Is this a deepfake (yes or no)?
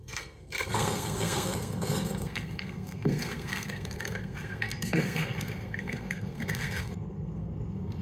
yes